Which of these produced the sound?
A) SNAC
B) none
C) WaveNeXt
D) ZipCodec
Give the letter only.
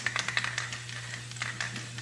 B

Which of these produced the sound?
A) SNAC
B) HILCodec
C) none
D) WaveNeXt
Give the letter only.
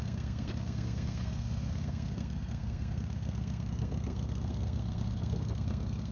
A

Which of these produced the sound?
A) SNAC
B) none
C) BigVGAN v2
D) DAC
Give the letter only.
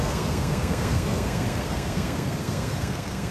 A